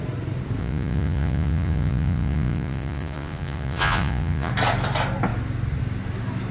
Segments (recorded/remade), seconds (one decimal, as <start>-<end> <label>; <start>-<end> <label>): 0.0-0.6 recorded; 0.6-4.5 remade; 4.5-6.5 recorded